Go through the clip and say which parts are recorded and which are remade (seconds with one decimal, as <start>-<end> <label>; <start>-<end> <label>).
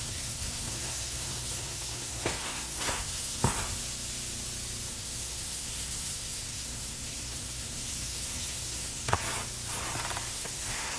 0.0-3.4 remade; 3.4-4.9 recorded; 4.9-9.2 remade; 9.2-10.3 recorded; 10.3-11.0 remade